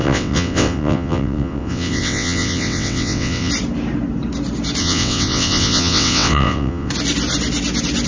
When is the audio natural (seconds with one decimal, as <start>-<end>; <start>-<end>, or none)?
3.5-4.8; 6.9-8.1